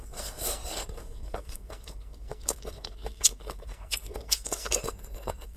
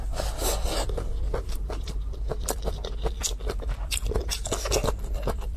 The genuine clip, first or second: second